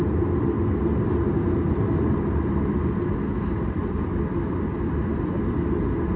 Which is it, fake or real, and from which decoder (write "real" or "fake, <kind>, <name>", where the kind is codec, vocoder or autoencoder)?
real